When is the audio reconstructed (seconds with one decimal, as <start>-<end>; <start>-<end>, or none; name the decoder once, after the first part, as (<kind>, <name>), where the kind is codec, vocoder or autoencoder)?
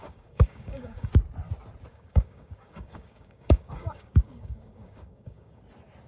0.0-1.1 (codec, DAC); 1.9-5.6